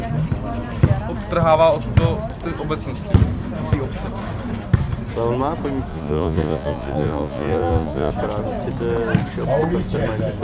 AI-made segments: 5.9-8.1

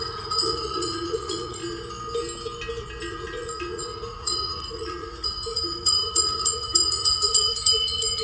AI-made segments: 0.0-1.6; 3.1-8.2

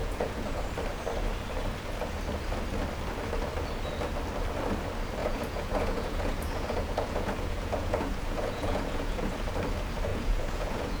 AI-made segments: 0.0-0.7; 5.2-9.3; 10.1-11.0

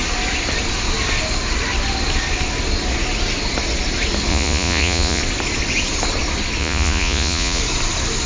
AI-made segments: 4.3-5.2; 6.6-7.6